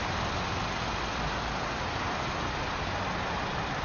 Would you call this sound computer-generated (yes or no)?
no